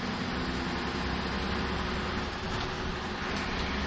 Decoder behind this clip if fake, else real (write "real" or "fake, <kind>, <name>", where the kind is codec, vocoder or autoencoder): real